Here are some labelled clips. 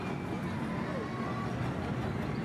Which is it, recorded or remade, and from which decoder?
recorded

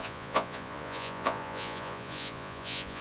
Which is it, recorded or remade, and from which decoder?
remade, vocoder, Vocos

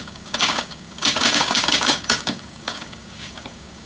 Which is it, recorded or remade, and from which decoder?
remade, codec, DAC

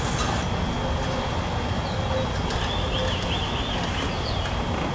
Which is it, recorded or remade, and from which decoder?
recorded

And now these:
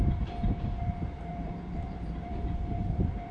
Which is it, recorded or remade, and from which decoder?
remade, vocoder, BigVGAN v2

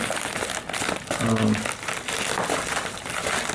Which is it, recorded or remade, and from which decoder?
recorded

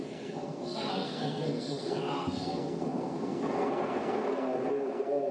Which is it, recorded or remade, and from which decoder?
remade, codec, SNAC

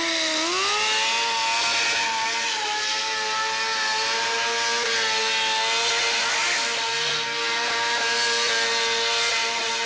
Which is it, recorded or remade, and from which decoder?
recorded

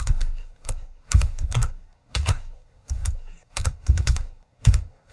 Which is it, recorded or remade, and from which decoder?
remade, codec, SNAC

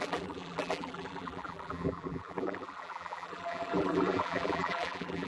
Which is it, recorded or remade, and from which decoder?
remade, vocoder, BigVGAN v2